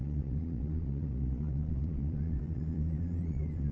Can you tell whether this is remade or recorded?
remade